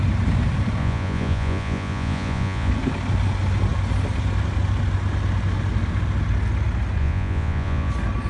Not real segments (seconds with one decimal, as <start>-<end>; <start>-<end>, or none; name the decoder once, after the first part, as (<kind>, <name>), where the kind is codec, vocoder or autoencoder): 0.8-2.7 (vocoder, Vocos); 7.0-7.9